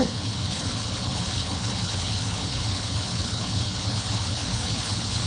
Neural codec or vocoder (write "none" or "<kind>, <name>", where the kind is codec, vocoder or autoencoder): codec, HILCodec